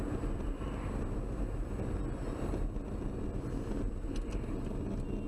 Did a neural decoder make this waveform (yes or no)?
no